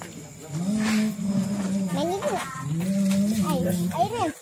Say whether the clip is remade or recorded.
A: recorded